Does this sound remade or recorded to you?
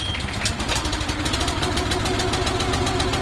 recorded